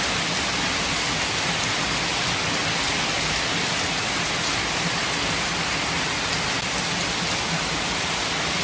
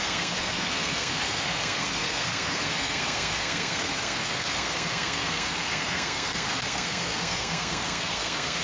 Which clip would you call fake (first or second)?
second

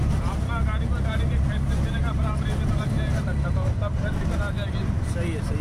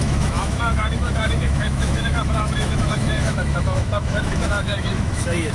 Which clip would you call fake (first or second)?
second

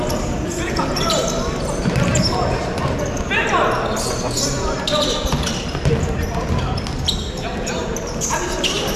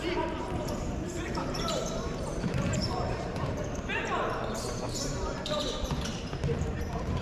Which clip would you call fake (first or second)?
second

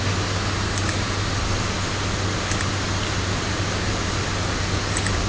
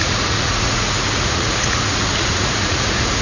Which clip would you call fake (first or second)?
second